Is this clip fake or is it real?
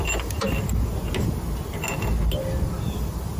real